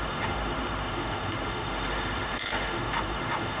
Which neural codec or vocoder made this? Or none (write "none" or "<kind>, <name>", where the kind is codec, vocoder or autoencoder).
autoencoder, DAC-VAE